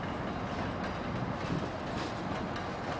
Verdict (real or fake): real